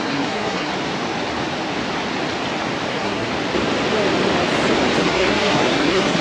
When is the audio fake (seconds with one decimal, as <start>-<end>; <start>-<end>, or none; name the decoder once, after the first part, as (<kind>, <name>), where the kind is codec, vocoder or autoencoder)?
0.0-0.7 (codec, SNAC); 2.9-3.3; 5.0-6.2